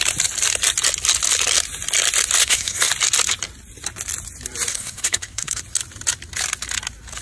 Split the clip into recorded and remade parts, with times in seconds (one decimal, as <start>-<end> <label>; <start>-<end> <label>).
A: 0.0-2.4 recorded; 2.4-2.9 remade; 2.9-4.7 recorded; 4.7-5.6 remade; 5.6-7.2 recorded